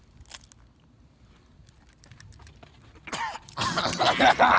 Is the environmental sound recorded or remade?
recorded